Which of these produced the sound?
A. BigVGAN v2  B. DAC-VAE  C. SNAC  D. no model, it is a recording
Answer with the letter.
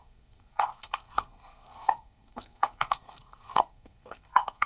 C